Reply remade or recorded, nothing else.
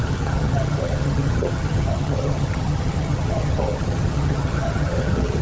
remade